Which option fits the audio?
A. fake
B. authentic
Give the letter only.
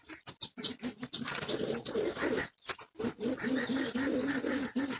B